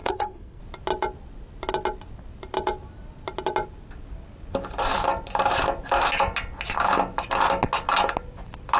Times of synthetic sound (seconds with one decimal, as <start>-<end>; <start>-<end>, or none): 0.0-0.6